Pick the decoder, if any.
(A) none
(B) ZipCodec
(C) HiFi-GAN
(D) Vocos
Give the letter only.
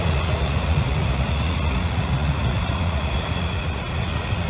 D